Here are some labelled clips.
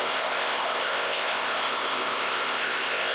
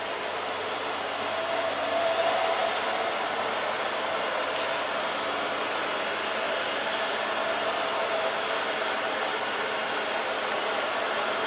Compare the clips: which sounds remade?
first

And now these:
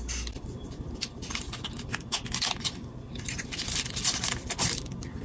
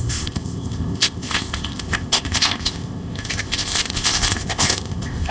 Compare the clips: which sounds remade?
second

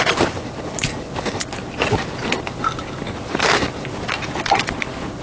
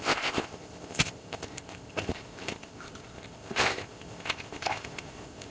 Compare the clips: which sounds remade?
second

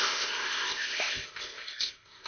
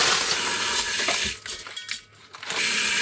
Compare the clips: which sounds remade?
first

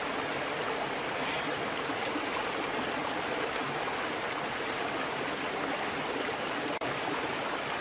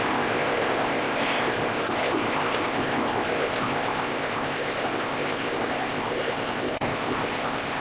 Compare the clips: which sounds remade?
second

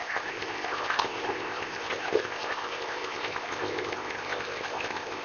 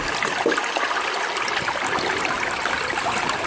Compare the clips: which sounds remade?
first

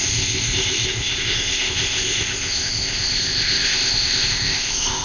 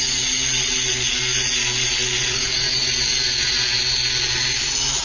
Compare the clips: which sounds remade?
first